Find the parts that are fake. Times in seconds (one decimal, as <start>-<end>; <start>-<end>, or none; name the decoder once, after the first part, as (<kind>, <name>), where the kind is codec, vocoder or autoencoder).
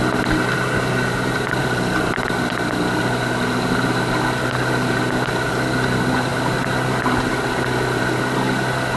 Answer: none